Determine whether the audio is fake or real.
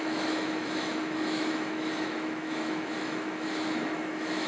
fake